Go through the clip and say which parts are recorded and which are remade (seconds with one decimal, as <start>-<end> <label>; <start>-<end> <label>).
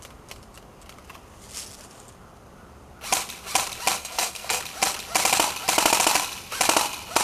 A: 0.0-4.0 recorded; 4.0-4.6 remade; 4.6-7.2 recorded